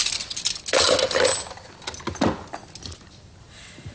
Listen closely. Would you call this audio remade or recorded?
recorded